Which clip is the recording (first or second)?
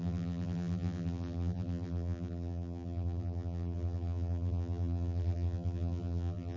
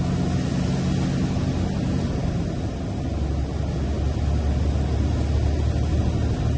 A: second